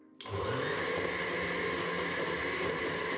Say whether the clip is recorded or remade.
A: recorded